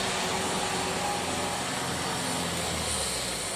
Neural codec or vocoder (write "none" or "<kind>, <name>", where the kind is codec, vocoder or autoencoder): none